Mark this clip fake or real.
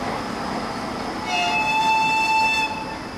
real